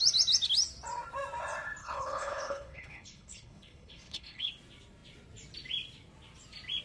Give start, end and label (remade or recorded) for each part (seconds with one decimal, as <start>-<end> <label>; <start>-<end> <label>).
0.0-1.8 recorded; 1.8-4.5 remade; 4.5-6.8 recorded